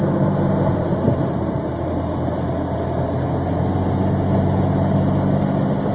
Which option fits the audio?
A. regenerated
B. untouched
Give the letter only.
B